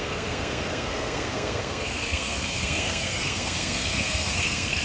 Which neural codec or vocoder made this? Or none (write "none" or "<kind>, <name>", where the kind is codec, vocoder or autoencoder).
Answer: codec, SNAC